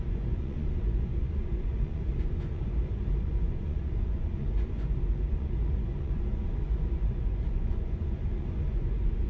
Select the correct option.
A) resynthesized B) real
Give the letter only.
A